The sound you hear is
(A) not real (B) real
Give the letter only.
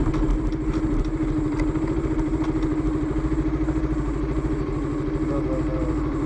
B